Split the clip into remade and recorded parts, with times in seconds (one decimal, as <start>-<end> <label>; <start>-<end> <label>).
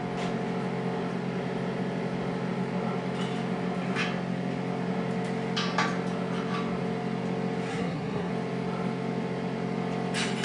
0.0-7.7 recorded; 7.7-8.3 remade; 8.3-10.4 recorded